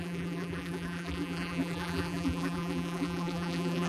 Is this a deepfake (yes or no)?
yes